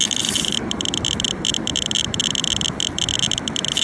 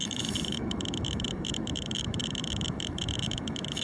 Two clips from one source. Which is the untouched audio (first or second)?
first